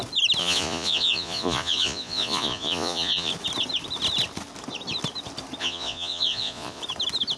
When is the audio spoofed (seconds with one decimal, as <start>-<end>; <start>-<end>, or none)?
0.4-3.3; 5.6-6.8